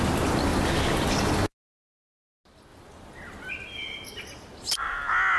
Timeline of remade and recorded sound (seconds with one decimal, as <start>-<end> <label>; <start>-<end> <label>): 0.0-5.4 recorded

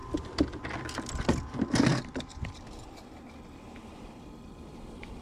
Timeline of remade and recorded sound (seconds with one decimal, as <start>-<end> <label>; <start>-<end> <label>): 0.0-5.2 recorded